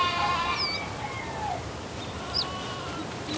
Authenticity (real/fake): real